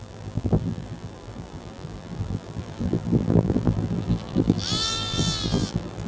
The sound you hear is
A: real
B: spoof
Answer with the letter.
B